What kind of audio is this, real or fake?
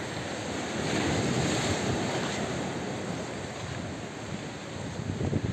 real